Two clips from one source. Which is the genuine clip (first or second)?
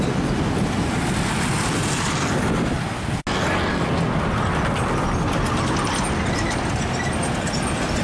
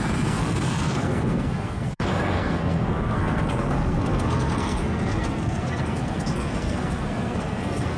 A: first